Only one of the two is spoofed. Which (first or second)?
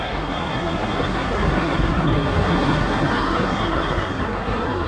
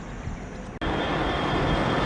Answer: first